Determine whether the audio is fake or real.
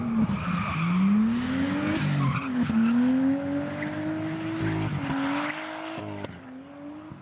real